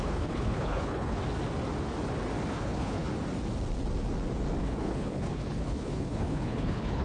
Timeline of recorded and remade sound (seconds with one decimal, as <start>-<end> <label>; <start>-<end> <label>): 0.0-1.2 remade; 1.2-2.5 recorded; 2.5-3.1 remade; 3.1-4.6 recorded; 4.6-7.0 remade